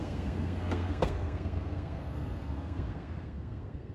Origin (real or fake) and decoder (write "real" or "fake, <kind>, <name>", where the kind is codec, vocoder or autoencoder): fake, codec, SNAC